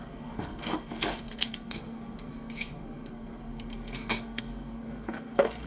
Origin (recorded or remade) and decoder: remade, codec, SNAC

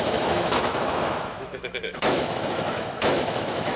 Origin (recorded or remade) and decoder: remade, autoencoder, DAC-VAE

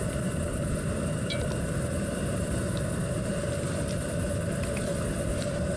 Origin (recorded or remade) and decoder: recorded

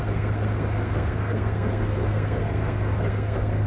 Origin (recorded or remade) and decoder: remade, codec, SNAC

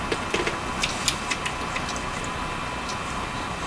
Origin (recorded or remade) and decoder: recorded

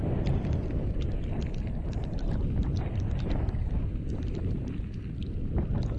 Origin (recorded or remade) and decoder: recorded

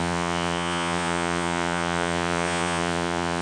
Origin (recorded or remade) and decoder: remade, vocoder, Vocos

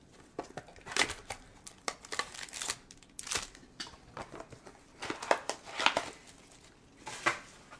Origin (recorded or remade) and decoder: recorded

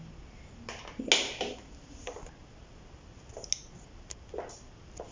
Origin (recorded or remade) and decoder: recorded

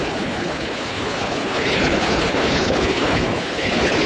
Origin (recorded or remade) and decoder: remade, codec, HILCodec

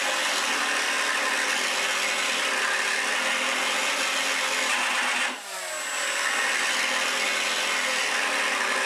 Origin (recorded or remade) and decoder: recorded